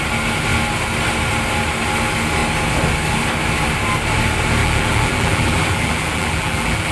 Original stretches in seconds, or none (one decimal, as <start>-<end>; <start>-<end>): 0.0-4.6